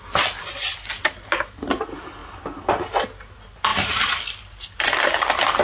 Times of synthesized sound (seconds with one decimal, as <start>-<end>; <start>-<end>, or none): none